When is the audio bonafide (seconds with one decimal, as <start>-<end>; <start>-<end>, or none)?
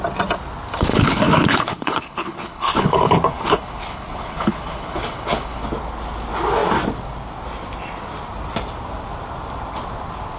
0.0-0.9; 5.7-10.4